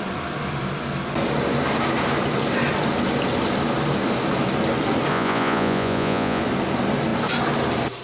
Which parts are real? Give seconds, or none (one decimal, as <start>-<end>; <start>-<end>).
0.0-5.1; 6.4-8.0